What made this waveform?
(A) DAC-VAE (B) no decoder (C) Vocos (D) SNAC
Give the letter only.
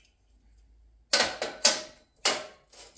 B